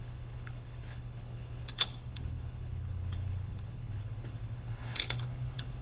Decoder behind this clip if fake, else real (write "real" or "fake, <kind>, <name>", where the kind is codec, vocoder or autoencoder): fake, codec, HILCodec